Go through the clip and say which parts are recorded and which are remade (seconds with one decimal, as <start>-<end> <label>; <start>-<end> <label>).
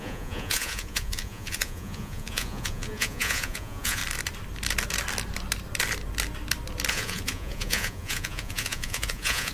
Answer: 0.0-4.0 remade; 4.0-6.9 recorded; 6.9-9.5 remade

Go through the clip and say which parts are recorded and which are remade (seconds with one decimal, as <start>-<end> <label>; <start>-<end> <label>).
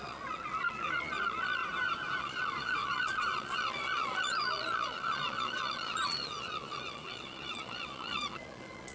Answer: 0.0-1.6 remade; 1.6-2.2 recorded; 2.2-8.9 remade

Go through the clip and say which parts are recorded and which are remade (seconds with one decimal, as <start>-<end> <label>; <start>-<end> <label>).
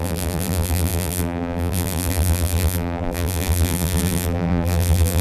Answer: 0.0-5.2 remade